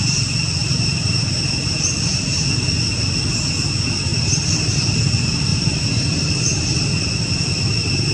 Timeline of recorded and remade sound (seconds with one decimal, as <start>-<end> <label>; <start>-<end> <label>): 0.0-0.6 recorded; 0.6-2.2 remade; 2.2-5.5 recorded; 5.5-7.1 remade; 7.1-8.1 recorded